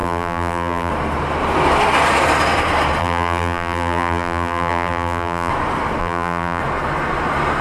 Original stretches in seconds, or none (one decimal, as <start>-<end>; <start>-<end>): 0.9-3.0; 5.5-6.0; 6.6-7.6